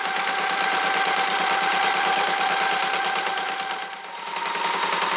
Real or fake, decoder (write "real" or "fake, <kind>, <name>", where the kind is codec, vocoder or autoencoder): real